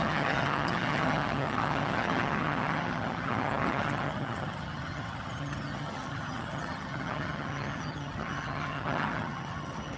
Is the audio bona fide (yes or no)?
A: no